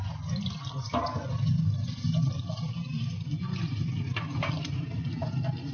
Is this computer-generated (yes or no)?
no